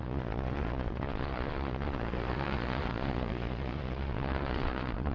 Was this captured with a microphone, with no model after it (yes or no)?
no